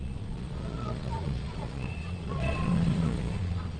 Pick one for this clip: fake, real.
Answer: fake